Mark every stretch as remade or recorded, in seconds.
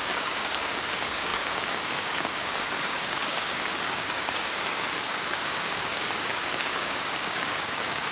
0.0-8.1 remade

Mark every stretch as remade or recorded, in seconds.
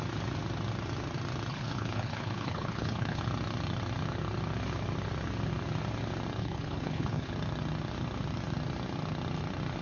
0.0-1.5 recorded; 1.5-3.2 remade; 3.2-6.4 recorded; 6.4-7.3 remade; 7.3-9.8 recorded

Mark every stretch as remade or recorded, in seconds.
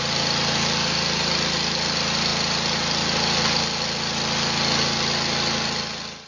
0.0-6.3 recorded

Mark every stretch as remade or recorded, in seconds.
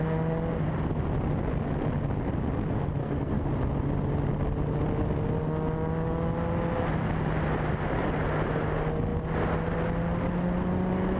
0.0-3.0 recorded; 3.0-3.5 remade; 3.5-11.2 recorded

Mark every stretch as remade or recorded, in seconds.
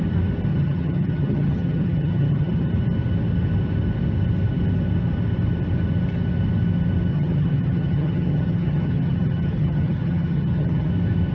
0.0-0.5 recorded; 0.5-2.7 remade; 2.7-7.1 recorded; 7.1-10.9 remade; 10.9-11.3 recorded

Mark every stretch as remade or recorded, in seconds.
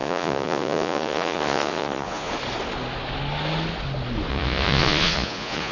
0.0-2.3 remade; 2.3-4.3 recorded; 4.3-5.7 remade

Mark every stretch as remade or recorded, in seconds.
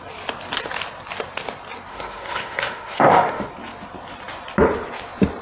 0.0-1.9 recorded; 1.9-3.5 remade; 3.5-5.4 recorded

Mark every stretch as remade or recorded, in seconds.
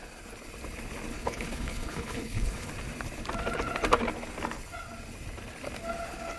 0.0-1.1 recorded; 1.1-2.7 remade; 2.7-6.4 recorded